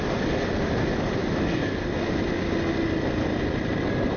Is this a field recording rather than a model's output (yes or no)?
yes